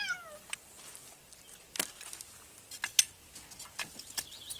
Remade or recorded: recorded